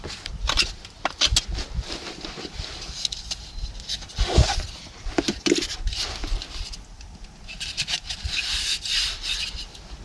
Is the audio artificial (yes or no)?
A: no